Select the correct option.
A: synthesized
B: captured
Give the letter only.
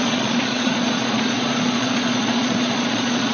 A